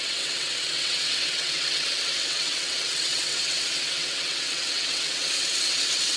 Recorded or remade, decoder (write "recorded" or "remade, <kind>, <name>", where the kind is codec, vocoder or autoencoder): remade, vocoder, WaveNeXt